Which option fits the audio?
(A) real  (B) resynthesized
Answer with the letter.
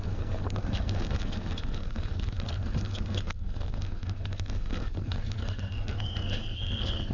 B